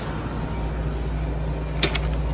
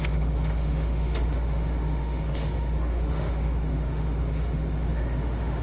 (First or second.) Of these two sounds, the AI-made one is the second